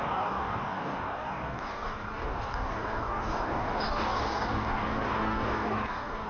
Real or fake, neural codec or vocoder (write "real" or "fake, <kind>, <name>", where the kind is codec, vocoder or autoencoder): fake, codec, DAC